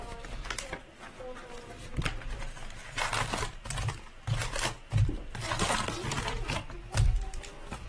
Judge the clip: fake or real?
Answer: real